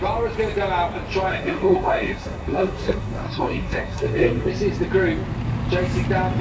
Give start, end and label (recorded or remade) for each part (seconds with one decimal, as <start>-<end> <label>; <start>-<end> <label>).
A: 0.0-1.3 recorded; 1.3-4.5 remade; 4.5-6.4 recorded